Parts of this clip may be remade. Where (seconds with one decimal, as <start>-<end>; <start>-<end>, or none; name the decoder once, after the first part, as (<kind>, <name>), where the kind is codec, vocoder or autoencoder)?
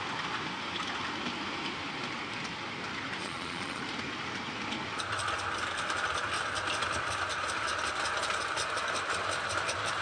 3.2-3.8 (vocoder, Vocos)